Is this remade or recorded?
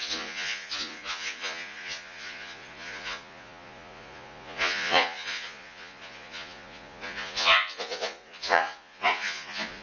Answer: remade